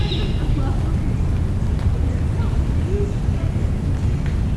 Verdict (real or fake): real